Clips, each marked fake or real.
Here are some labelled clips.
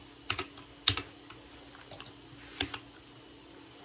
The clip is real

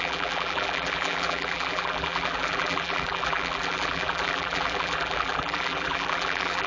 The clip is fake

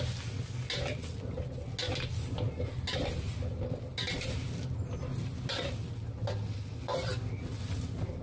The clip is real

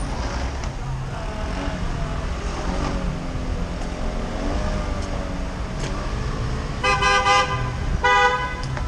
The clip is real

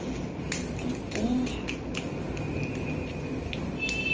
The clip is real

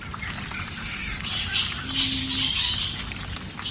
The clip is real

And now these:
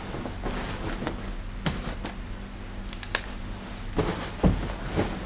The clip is real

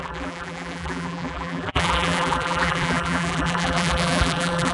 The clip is fake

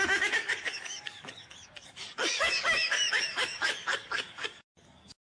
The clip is fake